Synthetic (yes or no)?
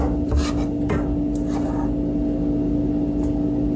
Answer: no